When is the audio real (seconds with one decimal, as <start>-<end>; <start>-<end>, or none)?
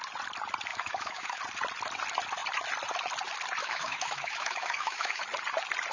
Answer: 0.0-0.7; 1.4-3.6; 5.2-5.9